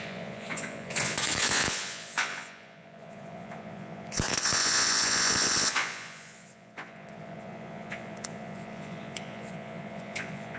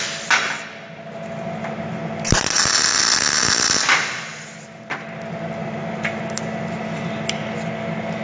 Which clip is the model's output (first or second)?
first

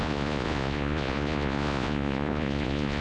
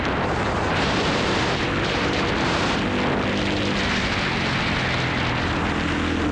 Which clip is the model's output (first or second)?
first